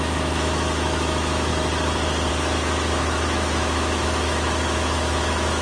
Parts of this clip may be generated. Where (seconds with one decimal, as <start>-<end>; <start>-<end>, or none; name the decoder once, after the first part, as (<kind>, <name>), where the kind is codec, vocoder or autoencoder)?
0.0-1.5 (autoencoder, DAC-VAE); 2.3-5.6